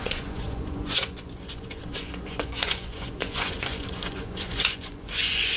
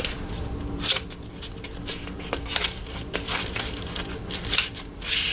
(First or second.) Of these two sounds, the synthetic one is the first